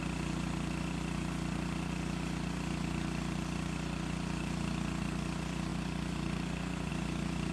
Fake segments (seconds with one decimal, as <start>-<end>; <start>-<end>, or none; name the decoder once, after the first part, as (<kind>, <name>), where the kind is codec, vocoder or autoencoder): none